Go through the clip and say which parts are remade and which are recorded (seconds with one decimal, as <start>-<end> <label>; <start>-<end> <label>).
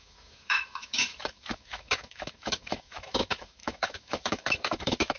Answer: 0.0-5.2 remade